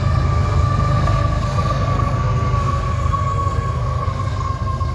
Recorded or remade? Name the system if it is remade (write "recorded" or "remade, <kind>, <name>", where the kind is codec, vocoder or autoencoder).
remade, codec, SNAC